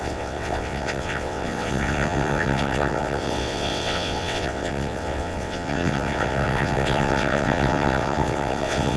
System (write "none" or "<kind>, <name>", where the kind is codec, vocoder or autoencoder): vocoder, WaveNeXt